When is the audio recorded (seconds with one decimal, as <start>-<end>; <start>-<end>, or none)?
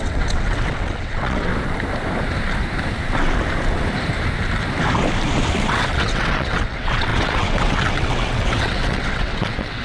1.5-5.5